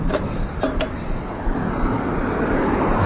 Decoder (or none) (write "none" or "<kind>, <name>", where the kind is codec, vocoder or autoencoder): none